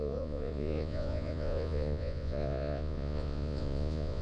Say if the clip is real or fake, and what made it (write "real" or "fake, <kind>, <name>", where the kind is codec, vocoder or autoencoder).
fake, vocoder, Vocos